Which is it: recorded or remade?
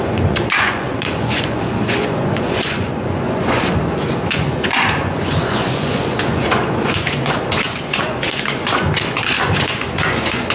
remade